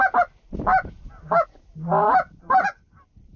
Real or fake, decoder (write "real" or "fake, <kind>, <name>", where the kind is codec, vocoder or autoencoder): real